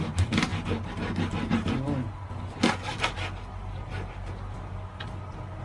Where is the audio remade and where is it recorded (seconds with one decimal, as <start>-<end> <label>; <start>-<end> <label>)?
0.0-5.6 recorded